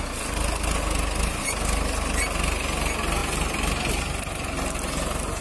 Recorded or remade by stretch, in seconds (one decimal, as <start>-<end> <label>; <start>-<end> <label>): 0.0-5.4 recorded